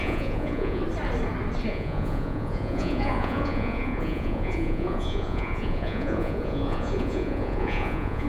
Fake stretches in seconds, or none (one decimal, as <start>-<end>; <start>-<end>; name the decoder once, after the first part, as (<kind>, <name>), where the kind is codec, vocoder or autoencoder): 0.0-0.8 (vocoder, Vocos); 1.7-8.3